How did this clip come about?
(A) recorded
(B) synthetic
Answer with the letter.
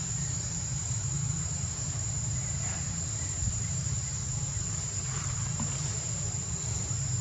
B